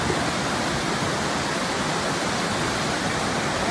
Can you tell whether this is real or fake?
real